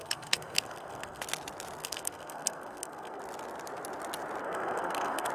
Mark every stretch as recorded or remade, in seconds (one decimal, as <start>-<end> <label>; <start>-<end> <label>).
0.0-1.2 remade; 1.2-1.8 recorded; 1.8-3.2 remade; 3.2-4.4 recorded; 4.4-5.3 remade